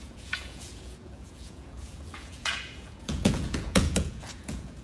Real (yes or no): no